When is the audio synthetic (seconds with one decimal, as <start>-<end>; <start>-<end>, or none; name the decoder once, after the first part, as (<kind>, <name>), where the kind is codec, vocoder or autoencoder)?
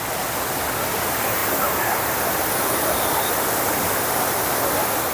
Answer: 1.4-4.4 (vocoder, BigVGAN v2)